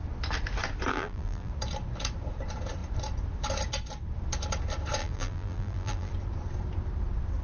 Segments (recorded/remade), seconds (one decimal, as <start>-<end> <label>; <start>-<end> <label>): 0.0-0.9 recorded; 0.9-1.5 remade; 1.5-5.0 recorded; 5.0-6.1 remade; 6.1-7.4 recorded